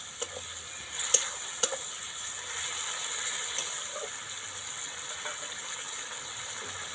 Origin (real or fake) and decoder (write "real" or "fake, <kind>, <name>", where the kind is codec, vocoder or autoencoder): real